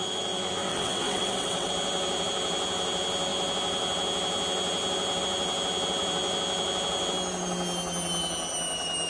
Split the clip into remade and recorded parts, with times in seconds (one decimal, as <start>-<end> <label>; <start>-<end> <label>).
0.0-0.7 recorded; 0.7-1.7 remade; 1.7-9.1 recorded